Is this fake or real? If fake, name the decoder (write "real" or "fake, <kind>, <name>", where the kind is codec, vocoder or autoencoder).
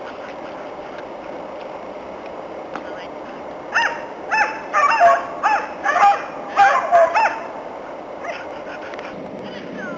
real